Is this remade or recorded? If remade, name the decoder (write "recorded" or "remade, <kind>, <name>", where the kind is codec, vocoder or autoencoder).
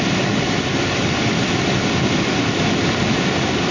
recorded